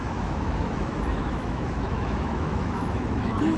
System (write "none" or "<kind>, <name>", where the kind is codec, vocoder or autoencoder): autoencoder, DAC-VAE